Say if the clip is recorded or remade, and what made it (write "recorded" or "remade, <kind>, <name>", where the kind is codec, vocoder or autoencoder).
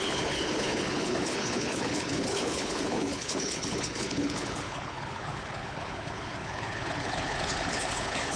remade, codec, HILCodec